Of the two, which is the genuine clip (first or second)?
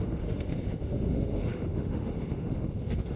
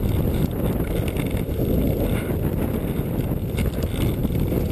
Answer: second